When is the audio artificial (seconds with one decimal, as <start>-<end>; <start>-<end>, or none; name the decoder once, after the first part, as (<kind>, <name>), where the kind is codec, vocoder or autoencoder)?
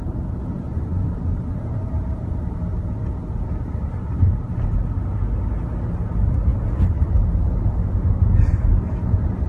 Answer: none